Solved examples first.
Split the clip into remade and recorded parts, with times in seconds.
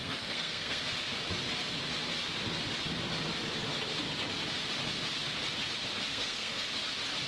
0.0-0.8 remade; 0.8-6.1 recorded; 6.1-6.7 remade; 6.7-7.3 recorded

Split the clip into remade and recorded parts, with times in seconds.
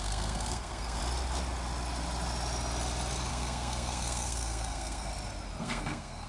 0.0-1.0 remade; 1.0-3.3 recorded; 3.3-5.1 remade; 5.1-5.6 recorded; 5.6-6.3 remade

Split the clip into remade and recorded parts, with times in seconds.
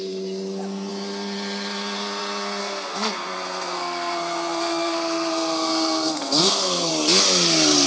0.0-2.6 recorded; 2.6-6.9 remade; 6.9-7.9 recorded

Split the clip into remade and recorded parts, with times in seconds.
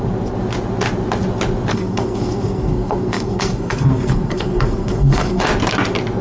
0.0-1.7 recorded; 1.7-5.4 remade; 5.4-6.2 recorded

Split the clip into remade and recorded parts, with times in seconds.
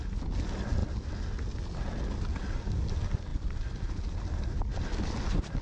0.0-5.6 recorded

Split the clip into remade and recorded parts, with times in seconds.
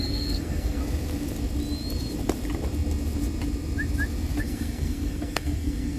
0.0-0.8 remade; 0.8-4.4 recorded; 4.4-6.0 remade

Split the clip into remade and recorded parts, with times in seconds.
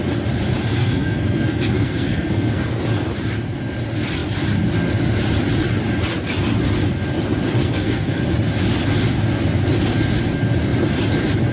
0.0-0.8 recorded; 0.8-2.8 remade; 2.8-7.6 recorded; 7.6-8.2 remade; 8.2-11.5 recorded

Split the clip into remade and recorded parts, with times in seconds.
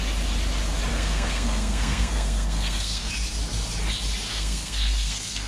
0.0-0.9 recorded; 0.9-3.1 remade; 3.1-4.3 recorded; 4.3-5.5 remade